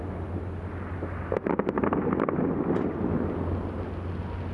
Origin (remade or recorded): recorded